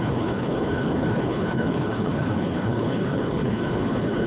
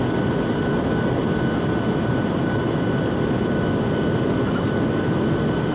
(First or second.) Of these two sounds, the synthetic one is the first